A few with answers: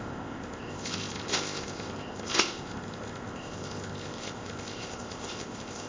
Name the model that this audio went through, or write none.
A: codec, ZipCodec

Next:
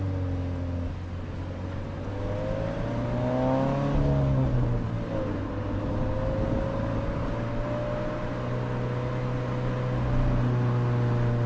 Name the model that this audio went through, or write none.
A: none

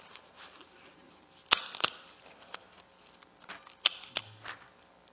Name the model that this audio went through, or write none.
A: none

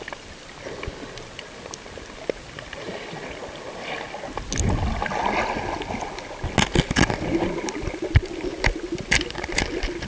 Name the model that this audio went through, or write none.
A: none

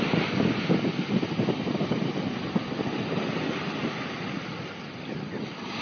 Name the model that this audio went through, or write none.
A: none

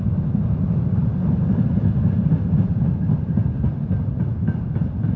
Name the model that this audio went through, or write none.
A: none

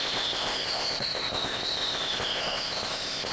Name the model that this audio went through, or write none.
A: codec, ZipCodec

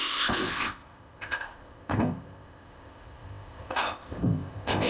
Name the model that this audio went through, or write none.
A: codec, ZipCodec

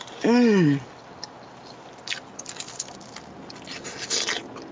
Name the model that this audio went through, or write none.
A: none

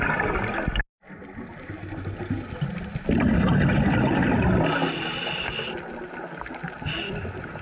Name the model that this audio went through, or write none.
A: none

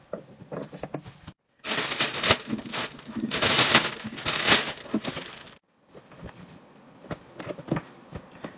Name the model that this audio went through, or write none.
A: none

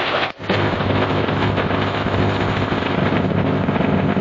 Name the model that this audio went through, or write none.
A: codec, ZipCodec